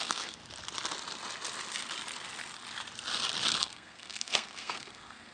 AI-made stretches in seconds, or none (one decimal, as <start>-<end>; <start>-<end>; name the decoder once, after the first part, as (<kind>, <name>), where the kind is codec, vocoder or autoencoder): 0.0-0.4 (codec, SNAC); 3.6-5.3